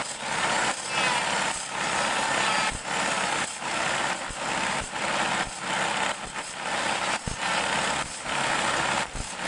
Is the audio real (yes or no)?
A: yes